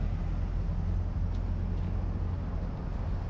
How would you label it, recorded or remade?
recorded